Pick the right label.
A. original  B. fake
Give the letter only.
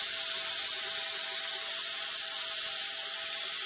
A